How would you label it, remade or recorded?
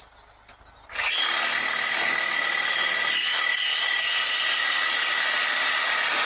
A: recorded